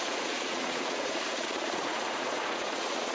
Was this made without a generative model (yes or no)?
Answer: no